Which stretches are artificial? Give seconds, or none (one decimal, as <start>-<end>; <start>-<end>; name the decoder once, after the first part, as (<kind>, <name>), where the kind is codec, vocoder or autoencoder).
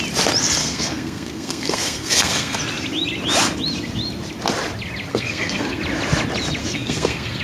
0.6-2.6 (codec, SNAC); 5.1-5.8; 6.6-7.4